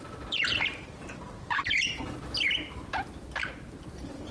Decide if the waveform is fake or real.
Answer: real